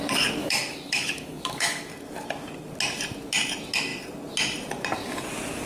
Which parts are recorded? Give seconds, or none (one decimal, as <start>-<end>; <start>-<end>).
0.0-0.4; 1.9-5.7